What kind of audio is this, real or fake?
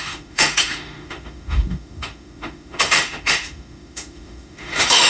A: fake